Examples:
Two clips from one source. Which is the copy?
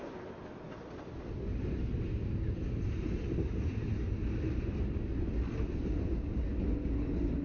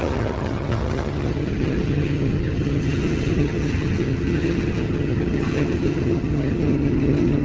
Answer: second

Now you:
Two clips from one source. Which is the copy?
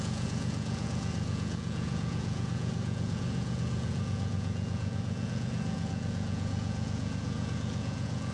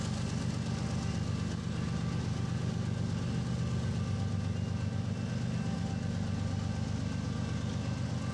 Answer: first